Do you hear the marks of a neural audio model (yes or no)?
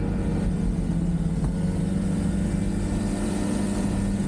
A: no